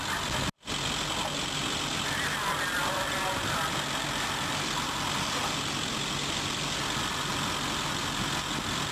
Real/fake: real